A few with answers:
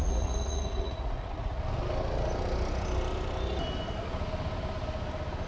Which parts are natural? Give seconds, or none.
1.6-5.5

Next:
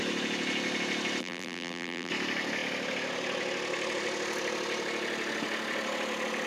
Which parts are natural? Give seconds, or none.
0.0-1.2; 2.1-6.5